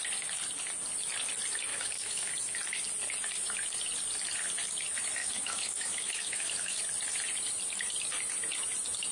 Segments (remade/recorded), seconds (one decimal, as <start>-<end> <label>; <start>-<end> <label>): 0.0-1.7 recorded; 1.7-2.3 remade; 2.3-5.2 recorded; 5.2-6.8 remade; 6.8-9.1 recorded